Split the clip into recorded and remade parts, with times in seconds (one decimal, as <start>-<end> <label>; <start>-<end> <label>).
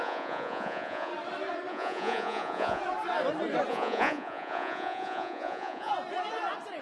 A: 0.0-1.1 remade; 1.1-1.7 recorded; 1.7-2.8 remade; 2.8-3.7 recorded; 3.7-5.9 remade; 5.9-6.8 recorded